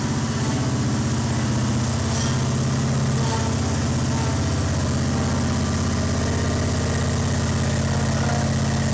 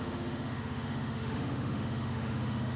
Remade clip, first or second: second